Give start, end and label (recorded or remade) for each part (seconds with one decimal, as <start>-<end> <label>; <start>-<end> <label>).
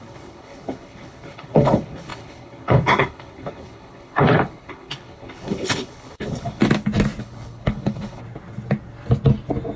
0.0-6.6 remade; 6.6-7.2 recorded; 7.2-8.2 remade; 8.2-9.8 recorded